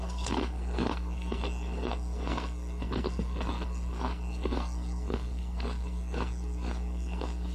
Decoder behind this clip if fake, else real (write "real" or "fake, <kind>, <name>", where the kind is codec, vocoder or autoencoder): fake, codec, SNAC